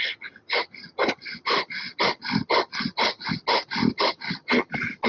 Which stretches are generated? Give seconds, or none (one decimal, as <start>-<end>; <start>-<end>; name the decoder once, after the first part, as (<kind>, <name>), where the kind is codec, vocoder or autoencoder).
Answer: none